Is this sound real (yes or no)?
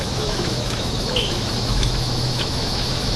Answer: no